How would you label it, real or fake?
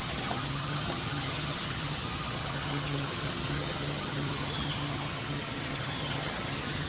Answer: fake